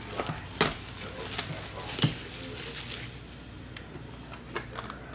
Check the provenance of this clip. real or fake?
real